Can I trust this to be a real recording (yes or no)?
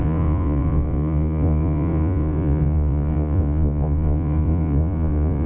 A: no